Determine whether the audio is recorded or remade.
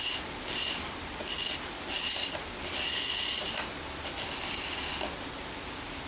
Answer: recorded